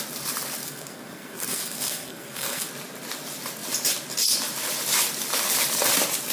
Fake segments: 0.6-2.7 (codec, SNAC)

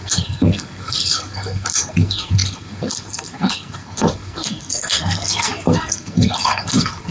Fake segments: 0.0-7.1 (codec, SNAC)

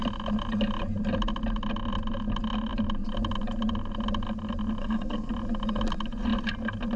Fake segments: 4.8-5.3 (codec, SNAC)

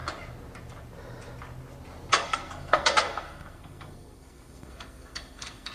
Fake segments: 2.1-5.7 (codec, SNAC)